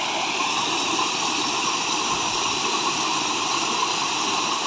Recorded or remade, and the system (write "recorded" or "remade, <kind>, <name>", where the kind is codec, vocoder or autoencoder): recorded